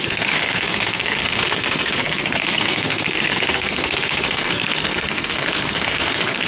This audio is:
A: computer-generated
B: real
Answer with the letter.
A